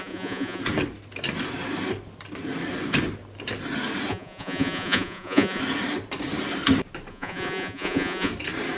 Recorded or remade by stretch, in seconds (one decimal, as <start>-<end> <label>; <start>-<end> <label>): 0.0-0.6 remade; 0.6-4.1 recorded; 4.1-5.6 remade; 5.6-7.1 recorded; 7.1-8.3 remade; 8.3-8.8 recorded